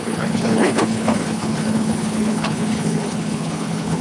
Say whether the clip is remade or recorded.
remade